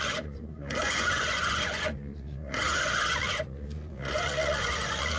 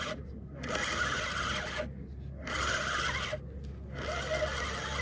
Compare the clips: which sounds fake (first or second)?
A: first